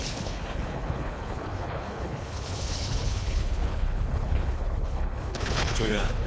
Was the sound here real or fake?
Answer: fake